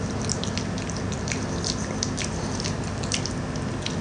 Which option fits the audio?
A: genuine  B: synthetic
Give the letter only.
A